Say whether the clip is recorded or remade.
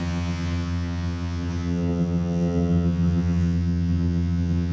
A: remade